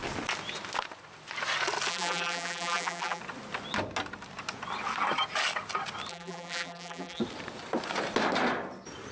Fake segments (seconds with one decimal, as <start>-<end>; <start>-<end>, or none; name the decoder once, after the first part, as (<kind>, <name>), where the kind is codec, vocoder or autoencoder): 1.9-3.2 (vocoder, BigVGAN v2); 6.1-7.2